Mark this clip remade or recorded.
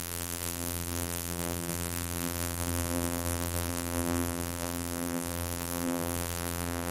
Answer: remade